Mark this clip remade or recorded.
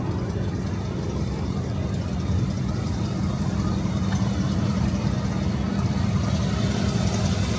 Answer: recorded